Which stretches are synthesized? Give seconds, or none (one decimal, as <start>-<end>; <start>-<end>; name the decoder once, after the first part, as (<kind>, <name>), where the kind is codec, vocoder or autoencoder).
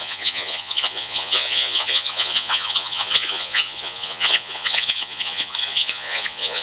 0.0-6.6 (vocoder, Vocos)